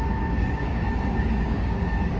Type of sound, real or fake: fake